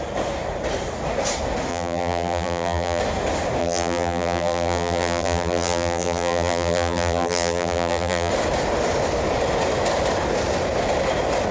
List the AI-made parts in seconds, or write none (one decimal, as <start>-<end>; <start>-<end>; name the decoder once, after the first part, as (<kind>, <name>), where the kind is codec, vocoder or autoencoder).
1.7-3.0 (vocoder, BigVGAN v2); 3.6-8.3